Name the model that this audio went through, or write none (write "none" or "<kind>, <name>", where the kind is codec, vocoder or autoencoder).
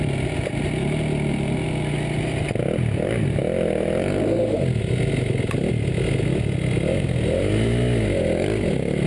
none